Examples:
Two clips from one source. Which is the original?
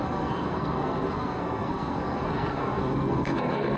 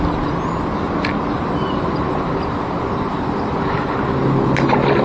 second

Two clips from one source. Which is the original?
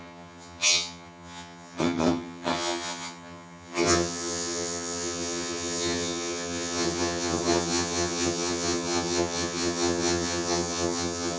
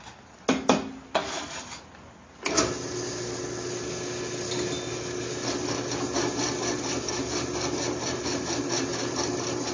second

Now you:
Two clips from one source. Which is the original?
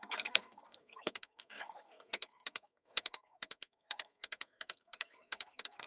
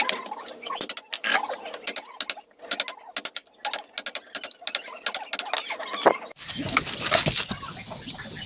second